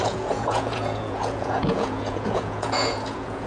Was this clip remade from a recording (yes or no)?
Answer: yes